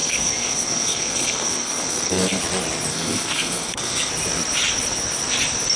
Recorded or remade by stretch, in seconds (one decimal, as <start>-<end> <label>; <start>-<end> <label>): 0.0-2.4 remade; 2.4-2.9 recorded; 2.9-4.1 remade; 4.1-5.8 recorded